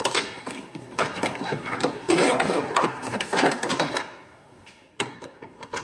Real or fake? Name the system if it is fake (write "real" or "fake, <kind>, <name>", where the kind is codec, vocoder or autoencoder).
fake, codec, SNAC